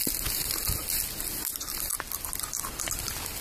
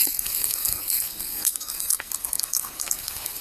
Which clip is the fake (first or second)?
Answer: second